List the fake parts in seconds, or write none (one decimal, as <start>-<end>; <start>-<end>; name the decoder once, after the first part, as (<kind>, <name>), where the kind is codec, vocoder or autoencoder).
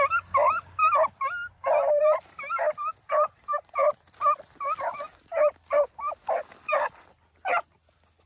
none